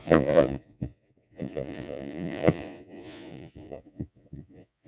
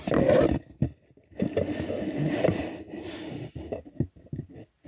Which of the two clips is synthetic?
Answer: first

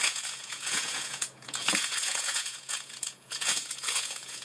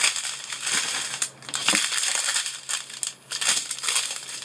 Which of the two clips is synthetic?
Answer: first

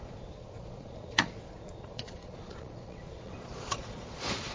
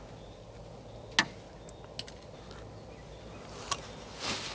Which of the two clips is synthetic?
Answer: first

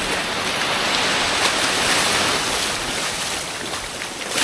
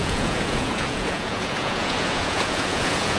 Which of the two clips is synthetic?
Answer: second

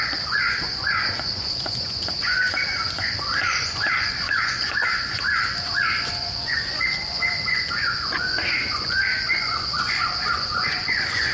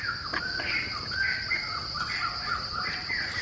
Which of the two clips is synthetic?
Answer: first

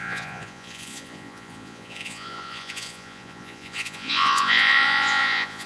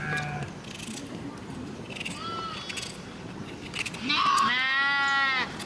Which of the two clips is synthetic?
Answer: first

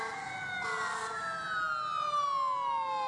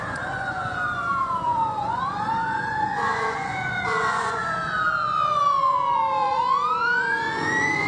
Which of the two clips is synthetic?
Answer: second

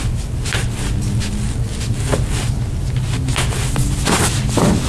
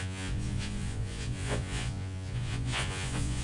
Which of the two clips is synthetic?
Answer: second